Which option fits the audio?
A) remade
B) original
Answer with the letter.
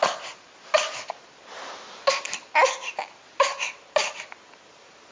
B